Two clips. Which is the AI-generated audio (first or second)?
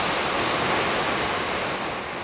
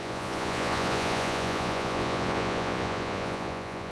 second